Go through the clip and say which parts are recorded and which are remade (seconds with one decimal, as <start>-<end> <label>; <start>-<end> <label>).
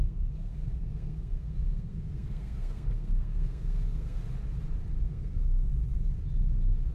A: 0.0-4.2 remade; 4.2-5.0 recorded; 5.0-5.7 remade; 5.7-6.9 recorded